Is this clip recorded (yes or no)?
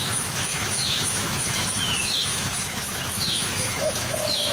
no